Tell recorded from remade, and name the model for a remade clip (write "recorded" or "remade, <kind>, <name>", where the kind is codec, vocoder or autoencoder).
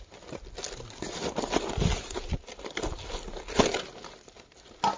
recorded